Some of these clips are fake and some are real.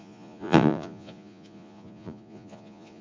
fake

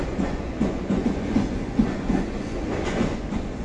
fake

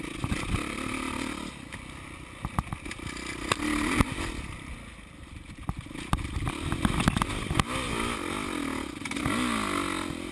real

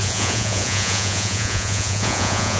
fake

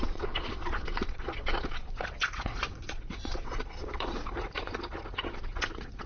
fake